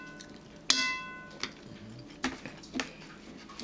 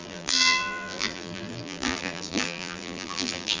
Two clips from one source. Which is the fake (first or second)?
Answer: second